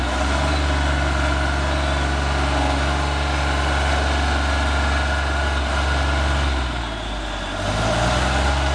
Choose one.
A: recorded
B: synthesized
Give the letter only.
A